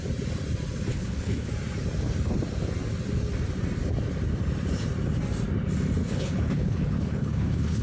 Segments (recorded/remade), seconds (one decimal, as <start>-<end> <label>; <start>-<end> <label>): 0.0-0.9 recorded; 0.9-1.5 remade; 1.5-6.0 recorded; 6.0-7.8 remade